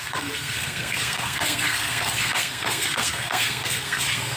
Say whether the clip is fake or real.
fake